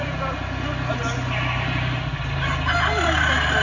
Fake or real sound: real